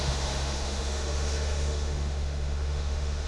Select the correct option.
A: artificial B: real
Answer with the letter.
A